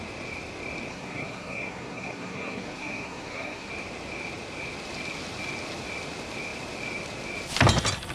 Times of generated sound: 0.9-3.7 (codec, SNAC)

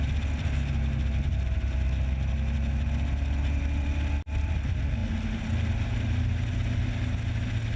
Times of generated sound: none

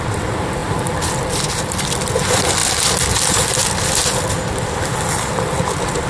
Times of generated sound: 0.6-1.4 (vocoder, BigVGAN v2)

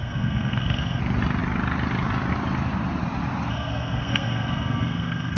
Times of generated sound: 0.0-1.0 (codec, SNAC); 3.5-5.4

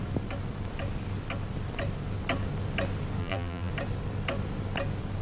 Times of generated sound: 3.2-3.7 (vocoder, BigVGAN v2)